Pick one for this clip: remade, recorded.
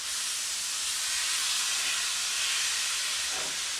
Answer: recorded